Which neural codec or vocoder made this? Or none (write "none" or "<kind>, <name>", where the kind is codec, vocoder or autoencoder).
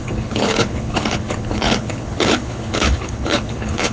codec, HILCodec